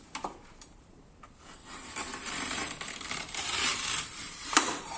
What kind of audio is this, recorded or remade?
remade